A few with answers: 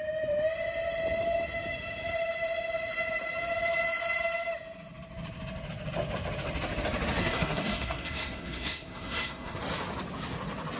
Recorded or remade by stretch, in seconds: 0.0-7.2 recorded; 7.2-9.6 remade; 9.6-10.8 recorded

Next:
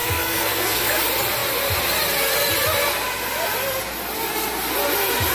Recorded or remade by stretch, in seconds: 0.0-0.9 remade; 0.9-5.3 recorded

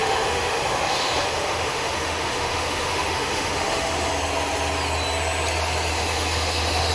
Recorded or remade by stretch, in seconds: 0.0-4.1 remade; 4.1-5.9 recorded; 5.9-6.9 remade

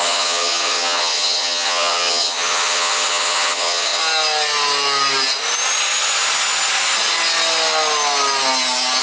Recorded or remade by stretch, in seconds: 0.0-4.0 remade; 4.0-9.0 recorded

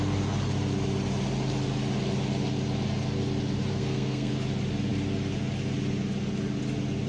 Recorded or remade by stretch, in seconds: 0.0-3.7 recorded; 3.7-4.3 remade; 4.3-7.1 recorded

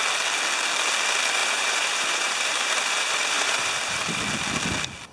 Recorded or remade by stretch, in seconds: 0.0-1.4 recorded; 1.4-4.2 remade; 4.2-5.1 recorded

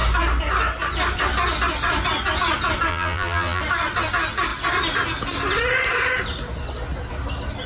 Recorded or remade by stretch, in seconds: 0.0-2.9 recorded; 2.9-3.6 remade; 3.6-7.7 recorded

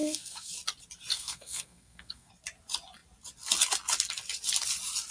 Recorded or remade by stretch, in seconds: 0.0-0.6 remade; 0.6-1.1 recorded; 1.1-2.3 remade; 2.3-5.1 recorded